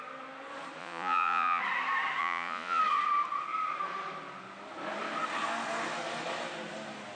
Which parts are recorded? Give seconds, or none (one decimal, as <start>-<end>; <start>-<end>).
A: 0.0-0.8; 1.6-2.2; 2.8-7.2